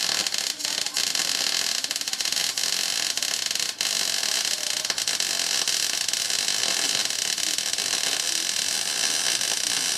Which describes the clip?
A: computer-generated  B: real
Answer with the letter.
B